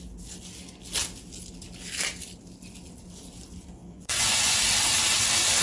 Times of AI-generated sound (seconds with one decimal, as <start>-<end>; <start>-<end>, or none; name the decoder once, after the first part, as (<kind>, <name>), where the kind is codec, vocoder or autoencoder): 3.8-4.6 (vocoder, Vocos)

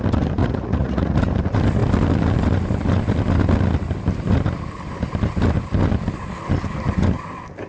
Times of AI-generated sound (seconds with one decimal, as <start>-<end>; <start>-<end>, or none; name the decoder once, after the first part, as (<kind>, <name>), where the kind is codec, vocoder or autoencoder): 0.4-1.2 (vocoder, Vocos)

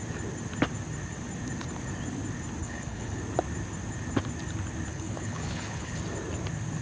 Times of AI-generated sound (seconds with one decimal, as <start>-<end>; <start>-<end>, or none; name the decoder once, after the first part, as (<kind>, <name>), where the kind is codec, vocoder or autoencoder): 2.6-3.2 (codec, HILCodec); 4.9-6.0

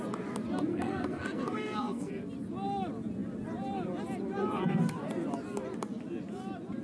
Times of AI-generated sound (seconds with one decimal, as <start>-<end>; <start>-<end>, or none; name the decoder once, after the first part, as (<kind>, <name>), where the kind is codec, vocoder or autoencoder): 0.7-2.1 (codec, SNAC)

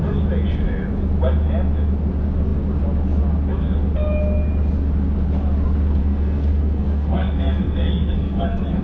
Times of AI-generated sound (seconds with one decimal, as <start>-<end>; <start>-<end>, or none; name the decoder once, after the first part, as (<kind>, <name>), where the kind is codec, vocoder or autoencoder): 6.0-8.8 (codec, SNAC)